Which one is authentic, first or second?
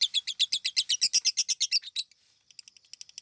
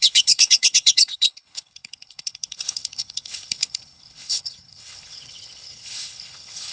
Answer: first